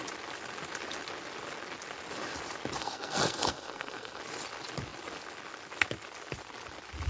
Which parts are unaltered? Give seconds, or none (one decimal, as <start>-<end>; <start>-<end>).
0.0-2.8; 4.2-7.1